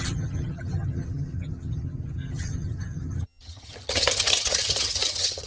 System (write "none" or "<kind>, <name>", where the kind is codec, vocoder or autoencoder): vocoder, HiFi-GAN